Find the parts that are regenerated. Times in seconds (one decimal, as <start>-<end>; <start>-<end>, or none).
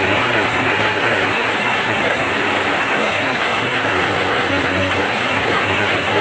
0.0-2.3; 2.8-6.2